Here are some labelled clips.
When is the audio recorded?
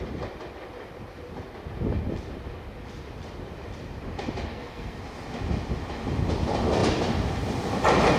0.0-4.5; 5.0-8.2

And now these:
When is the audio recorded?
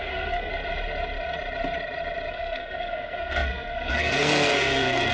0.5-2.3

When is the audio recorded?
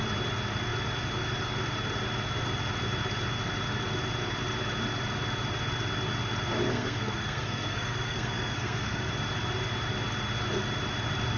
0.0-6.7; 9.1-11.4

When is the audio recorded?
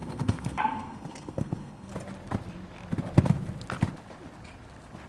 1.9-5.1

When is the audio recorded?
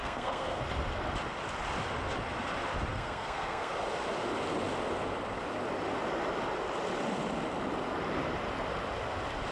0.6-2.9; 3.7-9.5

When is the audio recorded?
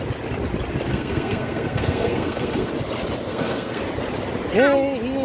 0.0-0.9; 2.7-3.3; 3.8-5.2